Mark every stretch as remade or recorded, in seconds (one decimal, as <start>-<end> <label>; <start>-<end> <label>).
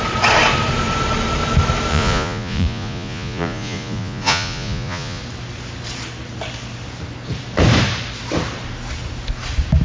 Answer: 0.0-1.9 recorded; 1.9-5.2 remade; 5.2-9.8 recorded